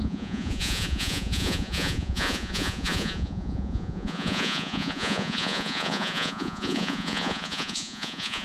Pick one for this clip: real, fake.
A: fake